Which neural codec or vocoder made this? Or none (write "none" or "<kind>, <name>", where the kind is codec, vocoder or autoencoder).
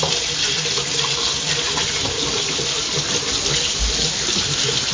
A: none